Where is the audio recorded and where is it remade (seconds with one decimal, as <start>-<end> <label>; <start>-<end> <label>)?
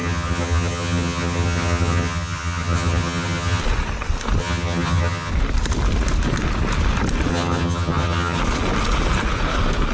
0.0-3.6 remade; 3.6-4.4 recorded; 4.4-5.3 remade; 5.3-7.3 recorded; 7.3-8.4 remade; 8.4-9.9 recorded